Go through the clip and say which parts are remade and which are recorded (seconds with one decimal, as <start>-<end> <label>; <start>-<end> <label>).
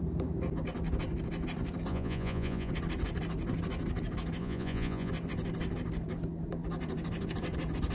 0.0-1.9 recorded; 1.9-2.7 remade; 2.7-4.4 recorded; 4.4-5.1 remade; 5.1-7.9 recorded